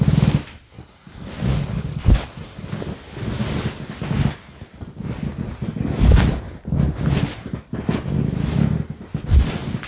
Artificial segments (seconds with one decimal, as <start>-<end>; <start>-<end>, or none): 0.7-2.8